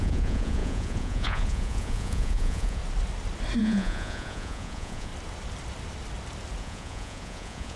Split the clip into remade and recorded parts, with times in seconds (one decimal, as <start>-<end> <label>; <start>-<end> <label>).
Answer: 0.0-2.8 remade; 2.8-3.6 recorded; 3.6-5.1 remade; 5.1-6.6 recorded; 6.6-7.8 remade